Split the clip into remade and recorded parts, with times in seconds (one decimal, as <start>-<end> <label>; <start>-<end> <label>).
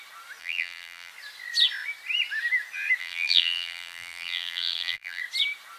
0.0-0.4 recorded; 0.4-1.1 remade; 1.1-3.0 recorded; 3.0-5.2 remade; 5.2-5.8 recorded